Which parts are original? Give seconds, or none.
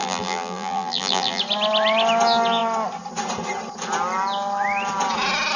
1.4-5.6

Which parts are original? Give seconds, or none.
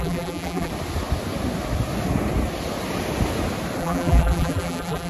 0.7-3.8